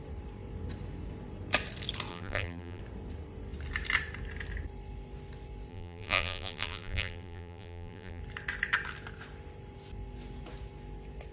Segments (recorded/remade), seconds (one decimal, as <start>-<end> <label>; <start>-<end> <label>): 0.0-2.1 recorded; 2.1-2.8 remade; 2.8-5.7 recorded; 5.7-8.2 remade; 8.2-11.3 recorded